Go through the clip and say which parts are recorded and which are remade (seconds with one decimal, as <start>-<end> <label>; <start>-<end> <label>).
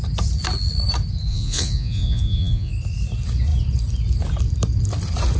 0.0-1.3 recorded; 1.3-2.7 remade; 2.7-5.4 recorded